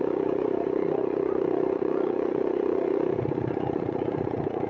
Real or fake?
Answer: fake